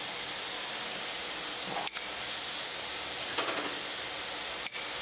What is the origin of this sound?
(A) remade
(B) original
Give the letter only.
B